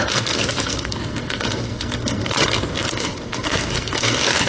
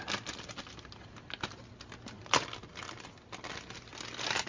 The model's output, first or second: first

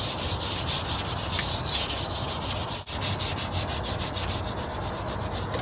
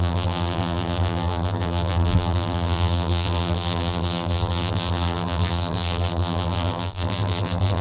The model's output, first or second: second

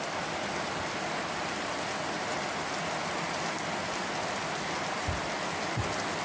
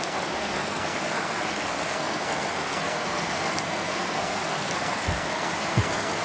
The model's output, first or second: second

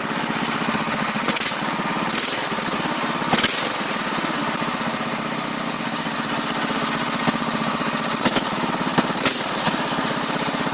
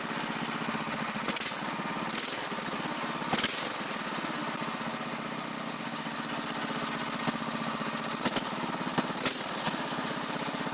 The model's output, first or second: first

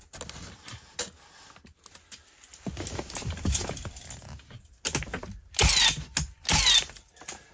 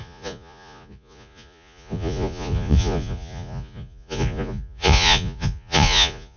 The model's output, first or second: second